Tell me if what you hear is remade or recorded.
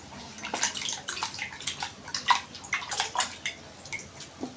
recorded